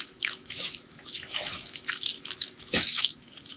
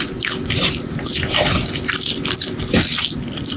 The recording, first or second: second